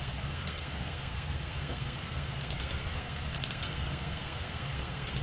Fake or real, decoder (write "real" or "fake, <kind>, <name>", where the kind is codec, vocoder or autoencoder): fake, codec, SNAC